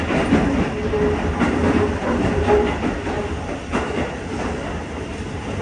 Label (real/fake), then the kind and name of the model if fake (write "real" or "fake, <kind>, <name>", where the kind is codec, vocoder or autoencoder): real